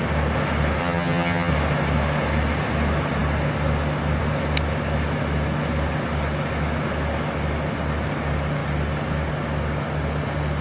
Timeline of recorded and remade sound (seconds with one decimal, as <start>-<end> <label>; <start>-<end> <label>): 0.0-0.8 recorded; 0.8-1.5 remade; 1.5-10.6 recorded